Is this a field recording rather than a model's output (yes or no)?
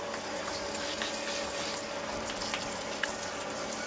yes